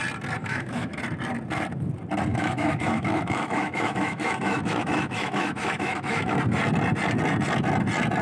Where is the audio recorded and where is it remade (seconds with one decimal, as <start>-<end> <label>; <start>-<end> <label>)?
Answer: 0.0-0.4 recorded; 0.4-1.0 remade; 1.0-2.3 recorded; 2.3-6.4 remade; 6.4-8.2 recorded